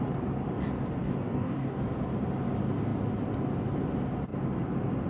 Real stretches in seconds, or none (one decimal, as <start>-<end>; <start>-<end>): 0.0-1.0; 1.8-5.1